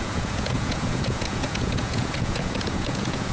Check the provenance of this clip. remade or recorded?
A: remade